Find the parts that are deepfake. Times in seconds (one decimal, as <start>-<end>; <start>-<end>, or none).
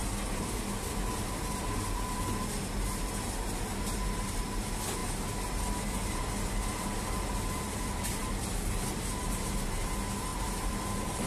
none